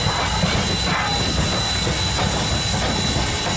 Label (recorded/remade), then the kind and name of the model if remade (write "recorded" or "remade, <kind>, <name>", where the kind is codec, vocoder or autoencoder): recorded